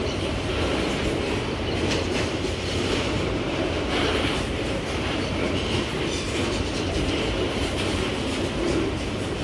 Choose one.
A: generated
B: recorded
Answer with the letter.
A